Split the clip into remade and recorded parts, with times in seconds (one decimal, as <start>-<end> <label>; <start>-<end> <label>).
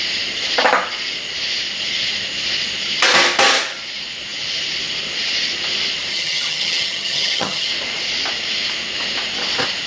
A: 0.0-6.1 recorded; 6.1-7.7 remade; 7.7-9.9 recorded